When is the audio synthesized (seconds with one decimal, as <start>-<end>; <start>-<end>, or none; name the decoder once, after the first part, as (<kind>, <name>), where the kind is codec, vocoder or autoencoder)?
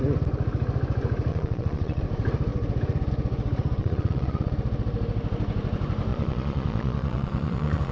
1.3-2.0 (vocoder, Vocos); 3.8-4.5; 6.1-7.9